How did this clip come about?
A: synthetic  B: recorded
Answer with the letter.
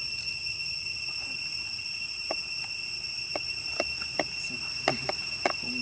B